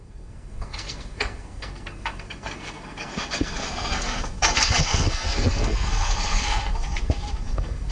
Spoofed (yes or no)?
yes